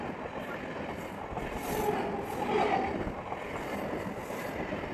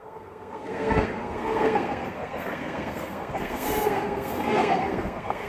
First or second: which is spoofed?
second